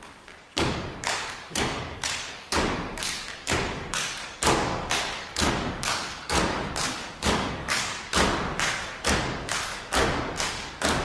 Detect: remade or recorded remade